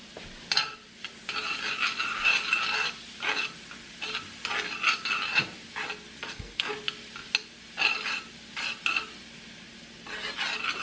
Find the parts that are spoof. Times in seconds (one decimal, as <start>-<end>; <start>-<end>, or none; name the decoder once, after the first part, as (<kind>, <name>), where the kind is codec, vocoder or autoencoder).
6.2-6.7 (codec, SNAC)